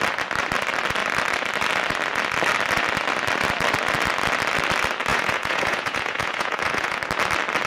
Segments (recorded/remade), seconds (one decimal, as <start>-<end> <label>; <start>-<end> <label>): 0.0-5.1 recorded; 5.1-7.0 remade; 7.0-7.7 recorded